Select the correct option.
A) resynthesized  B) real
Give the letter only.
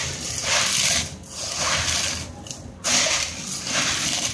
B